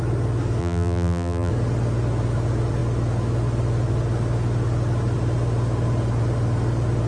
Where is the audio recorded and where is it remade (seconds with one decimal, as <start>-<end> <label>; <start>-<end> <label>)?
0.0-0.6 recorded; 0.6-1.5 remade; 1.5-7.1 recorded